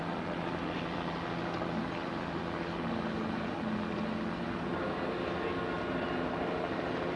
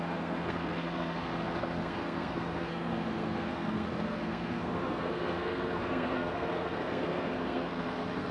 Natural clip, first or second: first